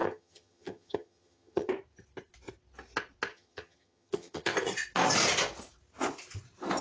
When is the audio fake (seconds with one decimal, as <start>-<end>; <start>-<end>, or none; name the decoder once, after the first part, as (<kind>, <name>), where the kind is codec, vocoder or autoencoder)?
0.0-1.7 (vocoder, HiFi-GAN); 3.3-4.5